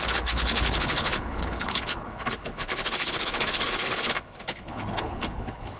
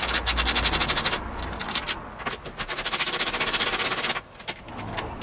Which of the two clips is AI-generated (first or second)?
first